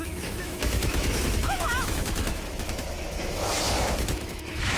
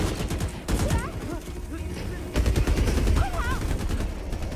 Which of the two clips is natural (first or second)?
second